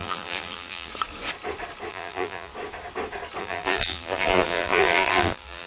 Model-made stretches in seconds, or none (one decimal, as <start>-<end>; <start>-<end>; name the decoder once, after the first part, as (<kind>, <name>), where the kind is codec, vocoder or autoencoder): 0.0-0.9 (vocoder, BigVGAN v2); 1.9-2.5; 3.4-5.7